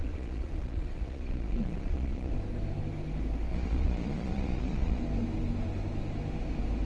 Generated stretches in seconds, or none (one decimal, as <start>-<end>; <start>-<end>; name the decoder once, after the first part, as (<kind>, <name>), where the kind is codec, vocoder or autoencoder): 0.0-2.3 (vocoder, Vocos); 3.5-5.0